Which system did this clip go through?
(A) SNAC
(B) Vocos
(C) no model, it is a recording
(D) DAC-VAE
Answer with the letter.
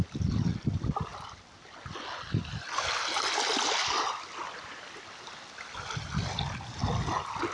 C